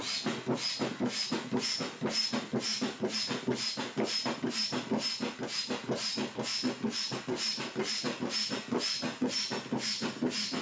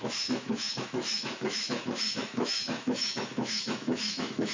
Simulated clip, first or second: second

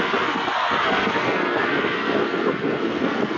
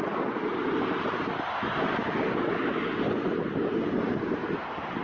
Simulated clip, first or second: first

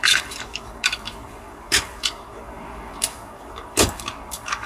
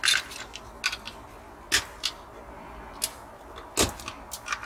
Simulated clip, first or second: first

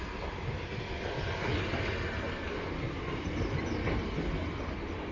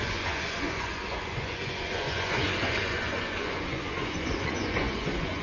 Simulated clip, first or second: second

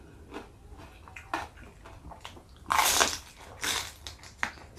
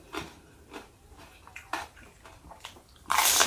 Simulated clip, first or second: second